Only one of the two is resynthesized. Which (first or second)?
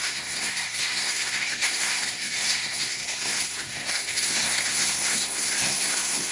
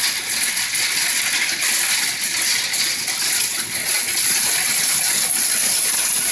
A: first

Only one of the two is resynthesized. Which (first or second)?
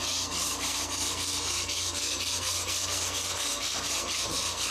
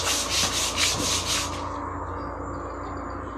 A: first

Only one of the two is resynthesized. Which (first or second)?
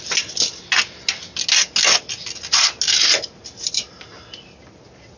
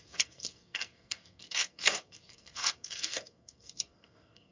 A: second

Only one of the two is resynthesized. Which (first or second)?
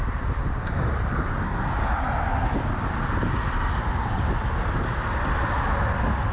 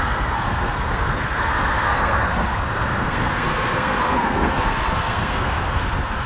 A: second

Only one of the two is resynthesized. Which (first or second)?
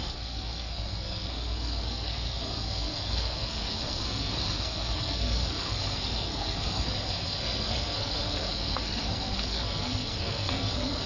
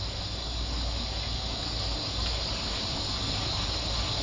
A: first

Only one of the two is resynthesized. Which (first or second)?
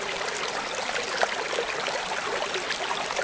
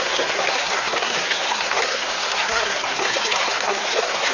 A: second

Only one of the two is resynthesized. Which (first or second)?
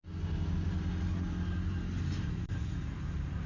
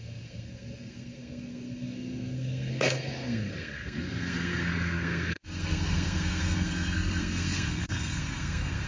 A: second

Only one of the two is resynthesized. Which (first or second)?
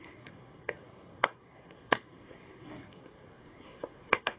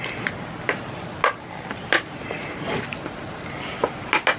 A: first